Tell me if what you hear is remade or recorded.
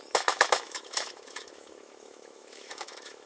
remade